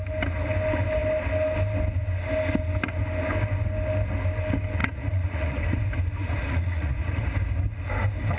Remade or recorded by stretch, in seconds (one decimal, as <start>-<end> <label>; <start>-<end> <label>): 0.0-4.8 recorded; 4.8-5.6 remade; 5.6-6.2 recorded; 6.2-7.2 remade; 7.2-8.4 recorded